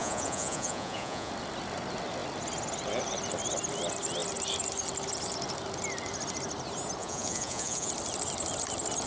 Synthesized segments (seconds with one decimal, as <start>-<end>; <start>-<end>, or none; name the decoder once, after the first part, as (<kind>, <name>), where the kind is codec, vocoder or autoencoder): 0.0-1.3 (vocoder, Vocos); 7.0-7.9